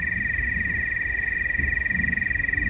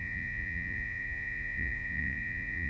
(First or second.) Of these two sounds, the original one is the first